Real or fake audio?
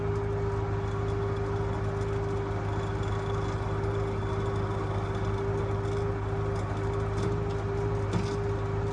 real